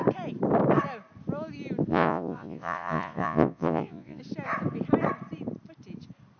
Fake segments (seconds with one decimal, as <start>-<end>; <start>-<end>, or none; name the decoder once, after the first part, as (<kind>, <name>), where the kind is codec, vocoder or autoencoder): 1.9-4.2 (vocoder, Vocos)